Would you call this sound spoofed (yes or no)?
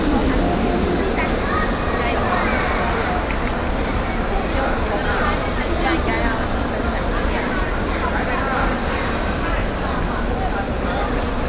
no